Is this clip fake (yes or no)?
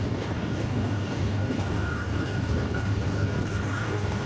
yes